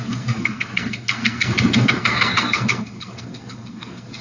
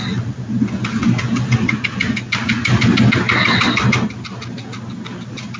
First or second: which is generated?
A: first